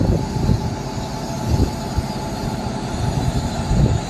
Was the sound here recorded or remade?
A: recorded